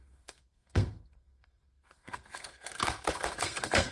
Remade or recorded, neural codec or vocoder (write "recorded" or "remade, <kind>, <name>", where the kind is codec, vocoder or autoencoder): remade, codec, SNAC